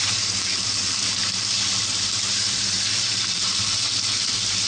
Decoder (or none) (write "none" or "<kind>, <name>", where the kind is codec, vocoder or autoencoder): vocoder, BigVGAN v2